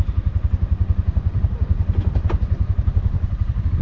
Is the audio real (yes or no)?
yes